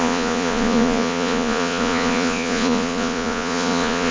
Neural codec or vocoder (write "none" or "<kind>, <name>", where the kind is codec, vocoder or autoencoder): vocoder, Vocos